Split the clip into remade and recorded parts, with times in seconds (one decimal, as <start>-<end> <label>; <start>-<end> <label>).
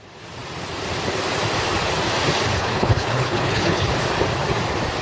0.0-2.6 recorded; 2.6-3.9 remade; 3.9-5.0 recorded